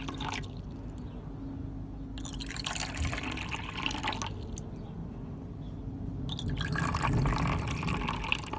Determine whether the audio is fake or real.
real